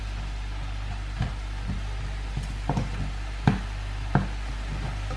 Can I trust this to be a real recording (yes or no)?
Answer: yes